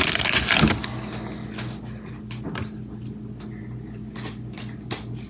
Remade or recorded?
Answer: recorded